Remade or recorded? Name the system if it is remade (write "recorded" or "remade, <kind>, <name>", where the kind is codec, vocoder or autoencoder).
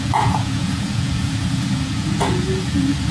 remade, vocoder, Vocos